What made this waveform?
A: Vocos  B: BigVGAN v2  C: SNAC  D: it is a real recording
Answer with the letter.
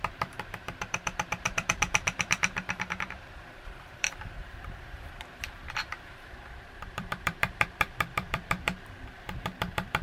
B